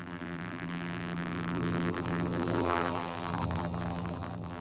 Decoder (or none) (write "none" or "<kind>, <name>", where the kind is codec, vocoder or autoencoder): vocoder, BigVGAN v2